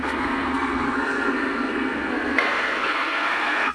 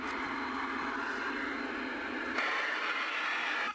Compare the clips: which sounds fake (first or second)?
first